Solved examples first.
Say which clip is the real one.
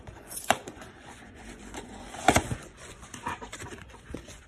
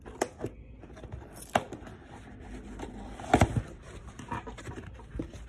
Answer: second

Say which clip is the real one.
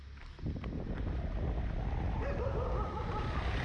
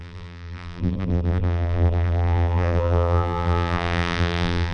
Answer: first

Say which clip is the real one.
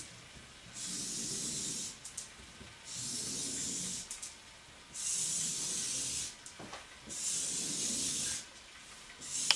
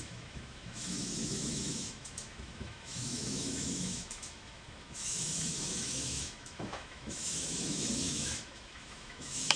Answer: first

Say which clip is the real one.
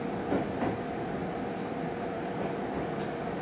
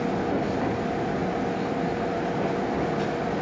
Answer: second